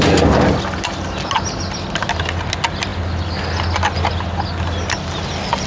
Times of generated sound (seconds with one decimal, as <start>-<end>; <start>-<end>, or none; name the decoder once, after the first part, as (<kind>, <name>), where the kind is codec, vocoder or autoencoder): none